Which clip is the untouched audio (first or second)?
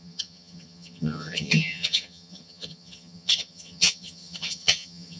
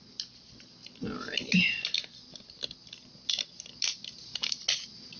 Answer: second